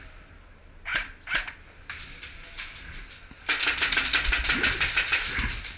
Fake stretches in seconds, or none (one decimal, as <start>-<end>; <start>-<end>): none